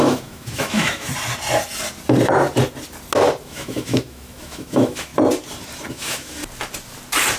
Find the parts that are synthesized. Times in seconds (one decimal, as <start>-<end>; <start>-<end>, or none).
0.0-1.1; 3.4-5.1; 5.9-6.4